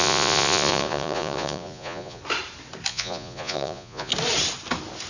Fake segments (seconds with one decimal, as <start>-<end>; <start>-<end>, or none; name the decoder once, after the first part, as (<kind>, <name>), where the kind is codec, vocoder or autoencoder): 0.0-2.2 (vocoder, Vocos); 2.9-4.1